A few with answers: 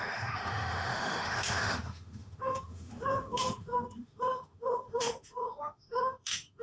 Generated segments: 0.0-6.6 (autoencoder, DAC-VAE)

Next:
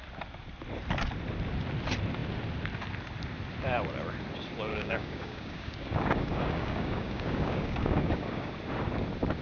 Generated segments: 4.7-8.5 (codec, DAC)

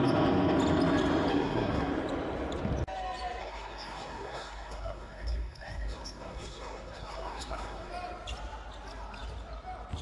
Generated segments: 1.3-1.9 (codec, SNAC); 3.4-7.9

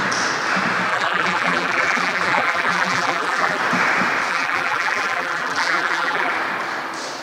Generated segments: 0.9-3.6 (vocoder, BigVGAN v2); 4.3-6.3

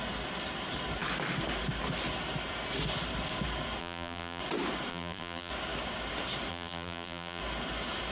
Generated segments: 3.8-4.4 (vocoder, BigVGAN v2); 4.9-5.5; 6.5-7.4